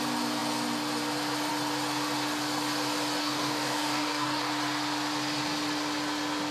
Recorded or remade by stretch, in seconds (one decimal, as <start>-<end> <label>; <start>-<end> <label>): 0.0-3.2 recorded; 3.2-4.5 remade; 4.5-6.5 recorded